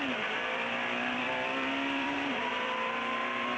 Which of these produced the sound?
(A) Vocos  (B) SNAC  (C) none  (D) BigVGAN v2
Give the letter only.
D